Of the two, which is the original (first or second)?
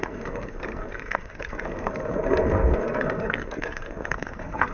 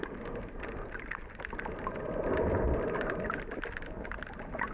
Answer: second